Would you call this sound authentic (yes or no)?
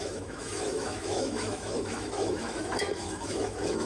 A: no